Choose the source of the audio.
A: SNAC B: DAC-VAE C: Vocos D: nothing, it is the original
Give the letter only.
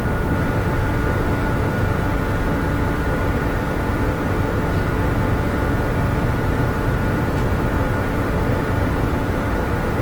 D